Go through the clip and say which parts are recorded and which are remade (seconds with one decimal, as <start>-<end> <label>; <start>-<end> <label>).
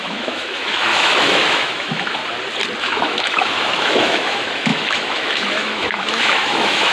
0.0-2.2 remade; 2.2-2.8 recorded; 2.8-6.9 remade